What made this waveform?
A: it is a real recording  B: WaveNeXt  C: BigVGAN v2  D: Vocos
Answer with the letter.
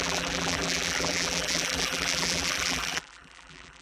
C